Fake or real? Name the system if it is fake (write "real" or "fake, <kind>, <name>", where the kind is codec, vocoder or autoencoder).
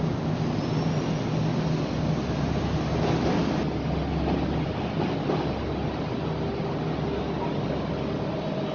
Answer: real